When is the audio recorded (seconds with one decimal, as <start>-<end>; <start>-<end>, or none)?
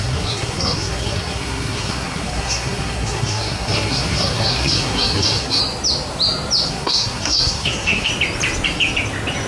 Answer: 5.6-6.7; 8.1-9.5